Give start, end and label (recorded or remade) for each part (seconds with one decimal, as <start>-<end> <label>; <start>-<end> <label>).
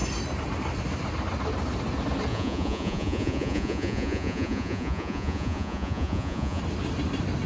0.0-2.3 recorded; 2.3-6.6 remade; 6.6-7.5 recorded